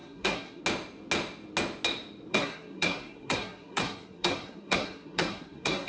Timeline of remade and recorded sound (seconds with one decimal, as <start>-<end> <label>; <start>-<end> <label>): 0.0-0.6 remade; 0.6-2.3 recorded; 2.3-5.9 remade